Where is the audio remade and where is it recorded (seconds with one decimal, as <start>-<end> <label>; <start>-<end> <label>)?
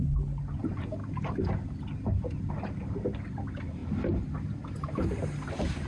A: 0.0-5.9 recorded